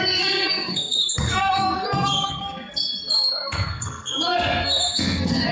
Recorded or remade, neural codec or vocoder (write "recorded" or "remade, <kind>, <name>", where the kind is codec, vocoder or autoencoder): remade, codec, SNAC